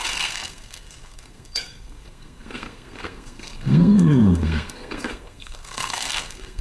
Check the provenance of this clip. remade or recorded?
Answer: remade